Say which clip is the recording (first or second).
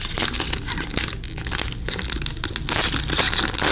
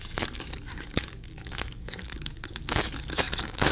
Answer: first